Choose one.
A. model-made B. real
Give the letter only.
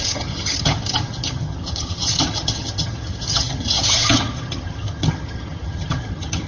A